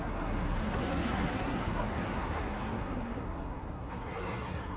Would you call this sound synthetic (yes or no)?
yes